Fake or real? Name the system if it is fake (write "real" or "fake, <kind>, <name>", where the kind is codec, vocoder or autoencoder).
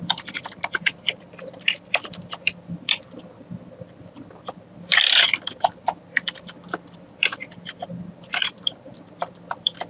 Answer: real